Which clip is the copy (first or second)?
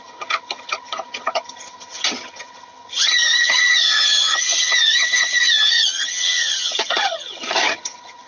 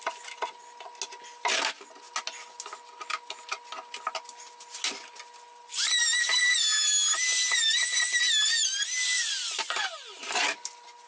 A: first